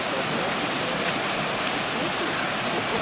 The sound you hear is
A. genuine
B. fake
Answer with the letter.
A